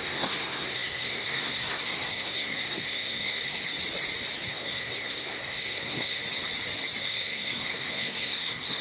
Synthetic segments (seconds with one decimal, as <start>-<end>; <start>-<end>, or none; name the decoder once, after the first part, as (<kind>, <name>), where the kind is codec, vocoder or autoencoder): 0.0-3.6 (codec, SNAC); 4.5-6.2; 7.0-8.8